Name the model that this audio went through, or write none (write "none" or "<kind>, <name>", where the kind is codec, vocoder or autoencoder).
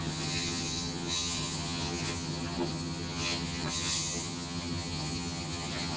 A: vocoder, HiFi-GAN